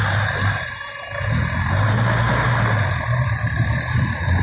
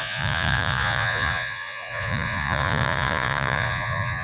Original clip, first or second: first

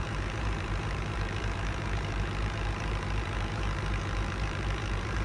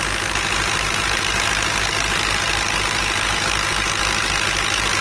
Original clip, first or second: second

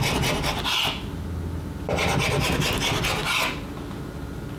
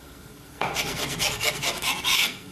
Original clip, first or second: first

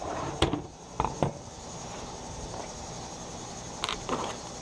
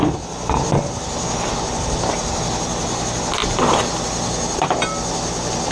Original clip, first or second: second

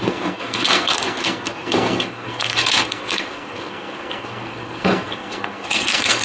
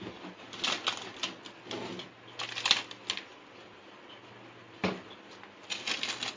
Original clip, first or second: second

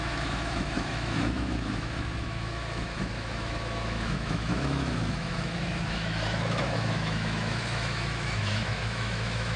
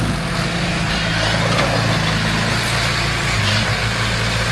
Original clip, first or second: second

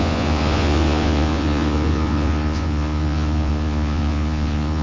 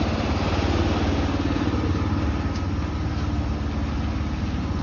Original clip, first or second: second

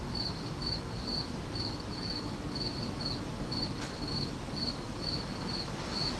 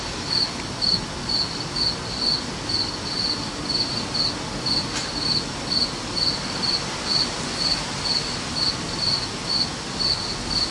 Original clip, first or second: second